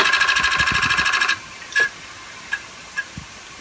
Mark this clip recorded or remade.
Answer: recorded